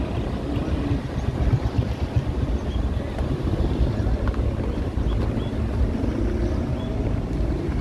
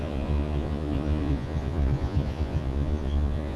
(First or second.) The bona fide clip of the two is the first